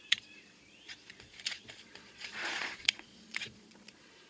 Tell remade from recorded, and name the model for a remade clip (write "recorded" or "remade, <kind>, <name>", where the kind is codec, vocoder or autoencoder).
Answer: remade, vocoder, Vocos